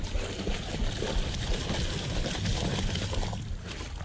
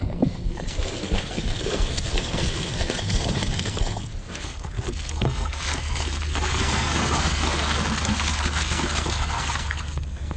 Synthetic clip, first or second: second